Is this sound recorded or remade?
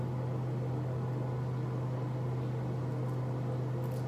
recorded